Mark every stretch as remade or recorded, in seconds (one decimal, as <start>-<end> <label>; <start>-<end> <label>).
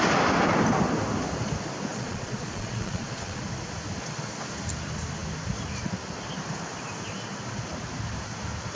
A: 0.0-1.9 recorded; 1.9-3.4 remade; 3.4-8.8 recorded